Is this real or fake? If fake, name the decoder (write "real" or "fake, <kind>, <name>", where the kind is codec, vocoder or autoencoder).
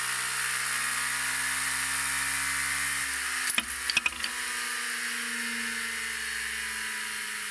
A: real